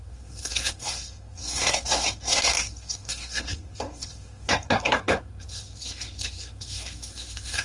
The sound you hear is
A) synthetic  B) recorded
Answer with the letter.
A